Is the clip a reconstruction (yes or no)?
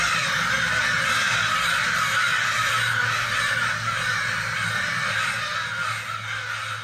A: no